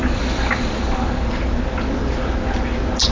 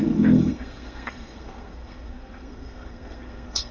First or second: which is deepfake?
second